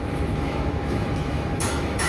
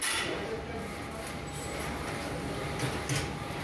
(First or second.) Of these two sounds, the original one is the second